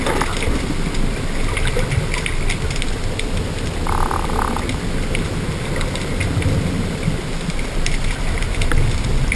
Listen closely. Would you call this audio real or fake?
real